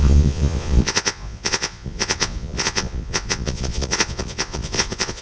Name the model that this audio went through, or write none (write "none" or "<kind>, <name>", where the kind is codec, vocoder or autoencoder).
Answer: vocoder, Vocos